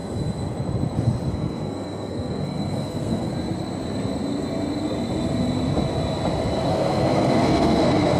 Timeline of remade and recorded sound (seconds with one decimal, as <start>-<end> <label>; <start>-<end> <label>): 0.0-1.3 recorded; 1.3-3.3 remade; 3.3-6.7 recorded; 6.7-8.2 remade